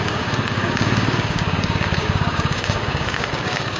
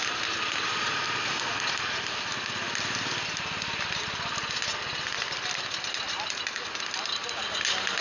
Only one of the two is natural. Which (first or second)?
second